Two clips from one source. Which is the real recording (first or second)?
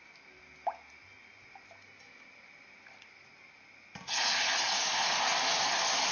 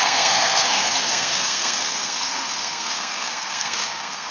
first